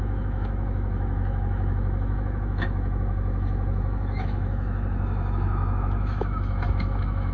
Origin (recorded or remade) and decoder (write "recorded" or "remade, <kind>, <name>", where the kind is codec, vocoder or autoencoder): remade, autoencoder, DAC-VAE